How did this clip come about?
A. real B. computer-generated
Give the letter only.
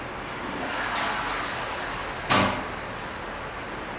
A